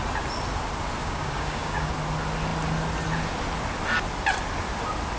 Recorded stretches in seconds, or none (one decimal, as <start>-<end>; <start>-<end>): 0.0-1.0; 1.9-5.2